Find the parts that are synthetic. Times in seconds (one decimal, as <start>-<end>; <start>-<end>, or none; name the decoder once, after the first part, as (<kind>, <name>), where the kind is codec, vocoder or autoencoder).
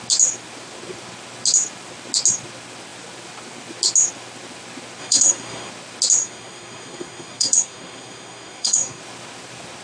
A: 5.0-5.7 (codec, SNAC); 6.2-9.0